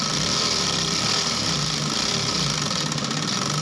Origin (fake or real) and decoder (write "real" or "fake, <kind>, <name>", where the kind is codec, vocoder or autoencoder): real